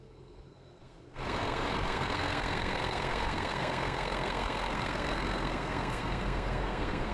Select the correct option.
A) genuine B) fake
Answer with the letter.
B